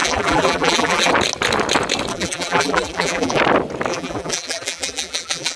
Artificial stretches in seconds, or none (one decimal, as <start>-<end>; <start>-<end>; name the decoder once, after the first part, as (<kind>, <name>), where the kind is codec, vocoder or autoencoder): 0.0-1.1 (vocoder, BigVGAN v2); 2.1-3.4; 3.9-5.6